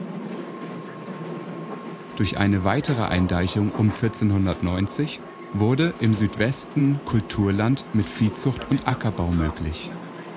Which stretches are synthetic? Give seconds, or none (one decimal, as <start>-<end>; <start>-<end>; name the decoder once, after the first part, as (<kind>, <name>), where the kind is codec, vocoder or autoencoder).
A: none